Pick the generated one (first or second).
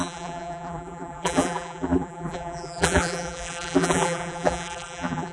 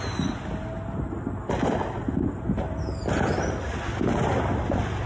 first